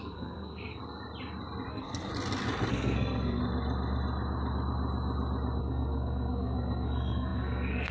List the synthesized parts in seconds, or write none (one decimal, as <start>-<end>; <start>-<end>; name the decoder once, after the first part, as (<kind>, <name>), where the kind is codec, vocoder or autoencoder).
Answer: 0.0-0.8 (codec, SNAC); 1.7-2.1; 2.7-3.4; 5.6-7.9

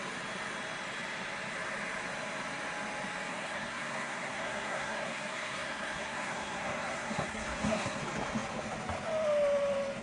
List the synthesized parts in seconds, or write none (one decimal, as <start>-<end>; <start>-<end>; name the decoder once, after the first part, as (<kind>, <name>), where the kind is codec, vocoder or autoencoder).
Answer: 3.3-8.0 (codec, SNAC)

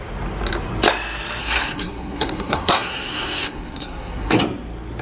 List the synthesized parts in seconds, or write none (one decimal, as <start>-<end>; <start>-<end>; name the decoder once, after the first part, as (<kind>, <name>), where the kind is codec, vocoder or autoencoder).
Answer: 1.4-4.4 (codec, SNAC)

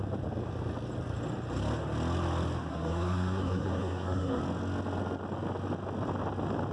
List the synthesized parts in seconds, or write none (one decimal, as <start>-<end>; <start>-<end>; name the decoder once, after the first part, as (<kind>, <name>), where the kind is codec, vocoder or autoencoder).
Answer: 2.7-4.4 (codec, SNAC)

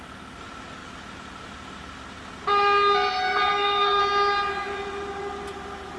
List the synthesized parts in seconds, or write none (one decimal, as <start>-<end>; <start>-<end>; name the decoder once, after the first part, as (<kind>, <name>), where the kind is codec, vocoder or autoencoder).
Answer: 3.5-4.0 (codec, SNAC)